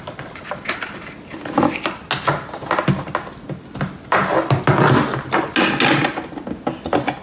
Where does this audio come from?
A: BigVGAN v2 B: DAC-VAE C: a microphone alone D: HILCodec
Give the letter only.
C